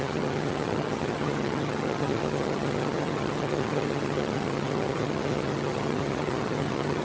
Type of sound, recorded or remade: remade